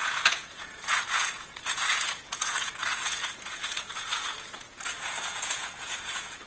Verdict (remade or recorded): remade